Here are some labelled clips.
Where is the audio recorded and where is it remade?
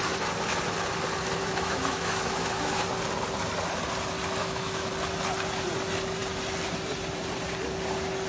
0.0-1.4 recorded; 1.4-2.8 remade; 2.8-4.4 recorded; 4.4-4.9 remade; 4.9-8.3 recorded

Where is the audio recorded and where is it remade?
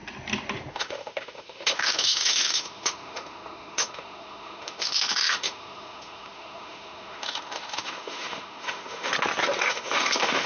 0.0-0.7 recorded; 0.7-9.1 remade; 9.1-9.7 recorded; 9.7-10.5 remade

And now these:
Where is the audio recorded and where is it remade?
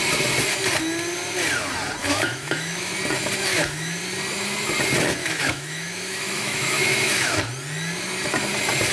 0.0-2.0 recorded; 2.0-2.9 remade; 2.9-3.5 recorded; 3.5-4.0 remade; 4.0-5.2 recorded; 5.2-7.4 remade; 7.4-8.9 recorded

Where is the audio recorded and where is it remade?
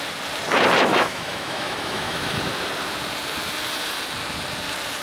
0.0-0.9 recorded; 0.9-2.4 remade; 2.4-5.0 recorded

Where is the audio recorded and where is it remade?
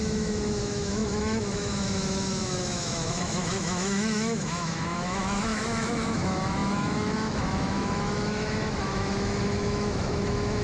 0.0-10.6 remade